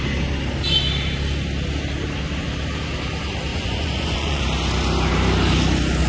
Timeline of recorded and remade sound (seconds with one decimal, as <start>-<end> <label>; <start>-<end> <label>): 0.0-3.5 recorded; 3.5-4.4 remade; 4.4-6.1 recorded